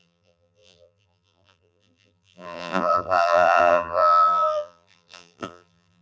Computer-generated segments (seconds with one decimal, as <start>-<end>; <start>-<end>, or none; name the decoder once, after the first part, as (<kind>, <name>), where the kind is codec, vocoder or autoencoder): 0.0-6.0 (vocoder, BigVGAN v2)